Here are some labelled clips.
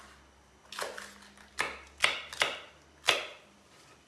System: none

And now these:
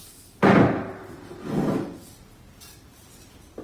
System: none